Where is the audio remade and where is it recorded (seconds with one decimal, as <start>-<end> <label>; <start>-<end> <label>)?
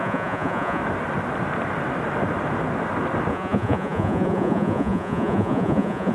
0.0-0.8 remade; 0.8-3.3 recorded; 3.3-6.1 remade